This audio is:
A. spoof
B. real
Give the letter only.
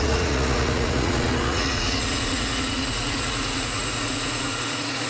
A